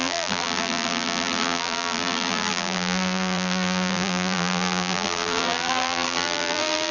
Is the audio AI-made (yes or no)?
yes